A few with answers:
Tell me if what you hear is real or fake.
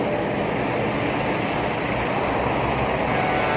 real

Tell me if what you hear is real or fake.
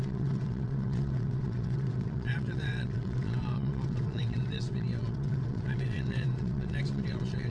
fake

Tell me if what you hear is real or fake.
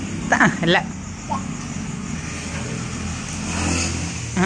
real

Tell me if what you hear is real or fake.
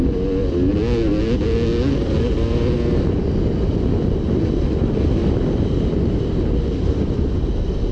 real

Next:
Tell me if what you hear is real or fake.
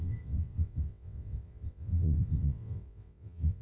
fake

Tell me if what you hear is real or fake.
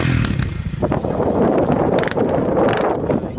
real